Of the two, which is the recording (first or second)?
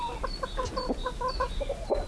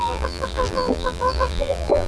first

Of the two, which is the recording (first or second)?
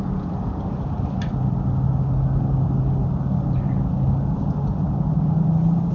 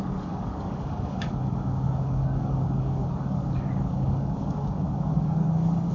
first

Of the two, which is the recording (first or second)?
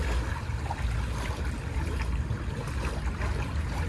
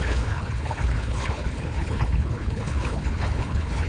first